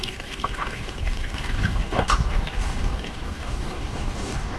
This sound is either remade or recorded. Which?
remade